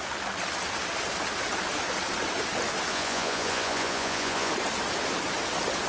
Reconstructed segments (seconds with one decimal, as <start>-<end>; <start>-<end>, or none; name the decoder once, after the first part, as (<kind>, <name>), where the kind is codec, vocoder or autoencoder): 2.9-4.5 (vocoder, Vocos)